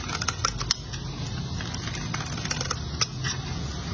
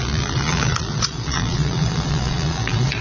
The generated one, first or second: second